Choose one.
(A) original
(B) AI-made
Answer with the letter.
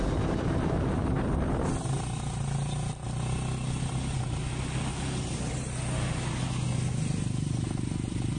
A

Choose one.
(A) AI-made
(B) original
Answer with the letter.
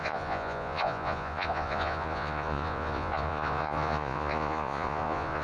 A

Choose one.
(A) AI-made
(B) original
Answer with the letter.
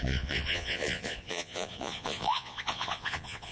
A